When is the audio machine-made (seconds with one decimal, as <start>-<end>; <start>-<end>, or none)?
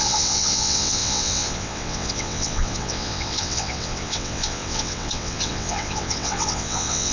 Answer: 0.0-7.1